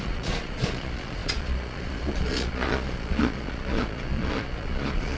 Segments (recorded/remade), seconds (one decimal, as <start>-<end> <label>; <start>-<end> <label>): 0.0-5.2 remade

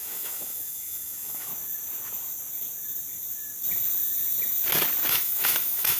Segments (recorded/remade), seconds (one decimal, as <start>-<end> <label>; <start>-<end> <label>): 0.0-1.5 remade; 1.5-5.1 recorded; 5.1-6.0 remade

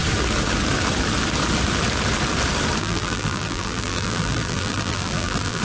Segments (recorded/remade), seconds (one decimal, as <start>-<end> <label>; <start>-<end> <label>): 0.0-2.8 recorded; 2.8-5.6 remade

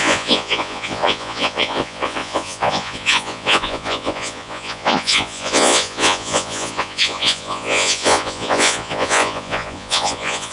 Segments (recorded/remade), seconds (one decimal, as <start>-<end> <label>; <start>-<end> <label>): 0.0-10.5 remade